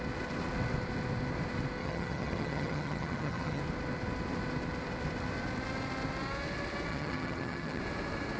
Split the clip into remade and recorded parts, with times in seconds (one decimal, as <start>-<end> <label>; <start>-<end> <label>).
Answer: 0.0-1.8 recorded; 1.8-3.6 remade; 3.6-6.9 recorded; 6.9-7.8 remade; 7.8-8.4 recorded